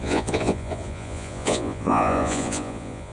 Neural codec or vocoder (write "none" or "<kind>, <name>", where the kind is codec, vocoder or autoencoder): vocoder, Vocos